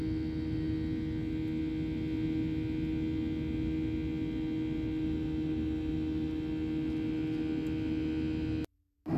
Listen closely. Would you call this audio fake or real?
real